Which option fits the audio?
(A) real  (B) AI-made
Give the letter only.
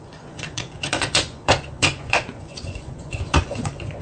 B